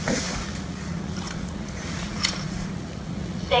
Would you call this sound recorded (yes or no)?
no